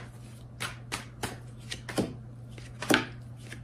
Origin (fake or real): real